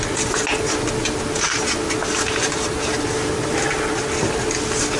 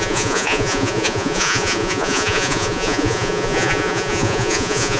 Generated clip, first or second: second